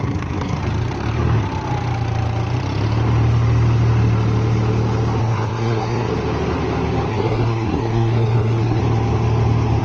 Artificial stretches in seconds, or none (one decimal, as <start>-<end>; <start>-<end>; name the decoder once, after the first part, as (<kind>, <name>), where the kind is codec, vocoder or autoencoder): 0.0-0.6 (codec, SNAC); 5.2-6.1; 7.1-8.8